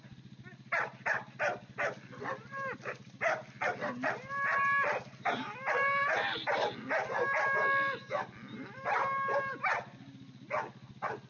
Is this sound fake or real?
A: real